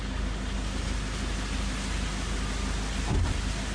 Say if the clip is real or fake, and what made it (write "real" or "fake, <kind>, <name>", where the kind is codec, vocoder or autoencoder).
real